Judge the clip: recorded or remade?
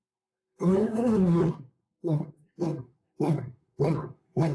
remade